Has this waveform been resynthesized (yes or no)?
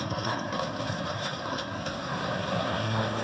yes